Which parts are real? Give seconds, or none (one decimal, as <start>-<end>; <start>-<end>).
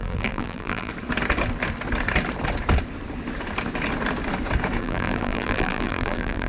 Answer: 0.9-4.8